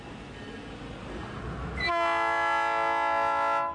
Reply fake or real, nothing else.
real